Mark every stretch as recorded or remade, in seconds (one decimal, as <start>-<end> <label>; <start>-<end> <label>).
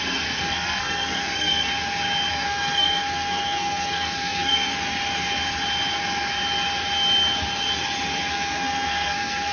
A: 0.0-1.7 remade; 1.7-2.3 recorded; 2.3-4.7 remade; 4.7-8.3 recorded; 8.3-9.5 remade